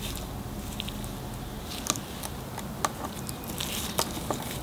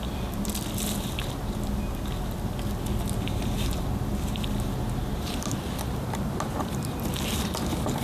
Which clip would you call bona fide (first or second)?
first